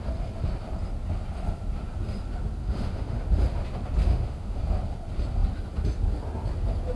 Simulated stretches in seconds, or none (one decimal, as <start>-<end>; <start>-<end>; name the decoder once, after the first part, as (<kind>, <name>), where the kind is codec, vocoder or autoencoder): 2.6-3.2 (autoencoder, DAC-VAE); 4.0-4.6